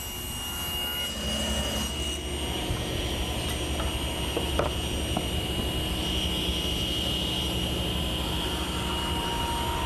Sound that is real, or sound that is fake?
real